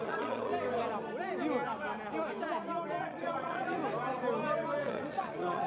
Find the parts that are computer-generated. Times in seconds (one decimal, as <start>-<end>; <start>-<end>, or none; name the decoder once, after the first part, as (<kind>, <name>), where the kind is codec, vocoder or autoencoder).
0.0-0.5 (vocoder, Vocos); 3.0-3.8; 4.8-5.7

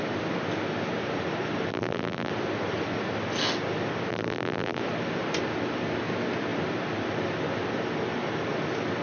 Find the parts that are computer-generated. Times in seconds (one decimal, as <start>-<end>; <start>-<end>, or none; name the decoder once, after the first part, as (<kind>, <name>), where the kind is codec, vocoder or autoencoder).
1.7-2.3 (vocoder, BigVGAN v2); 4.1-4.8